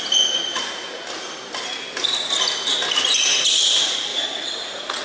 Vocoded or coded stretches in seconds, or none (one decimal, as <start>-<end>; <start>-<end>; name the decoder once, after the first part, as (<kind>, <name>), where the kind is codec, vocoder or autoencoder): 0.5-1.0 (vocoder, Vocos); 4.1-5.0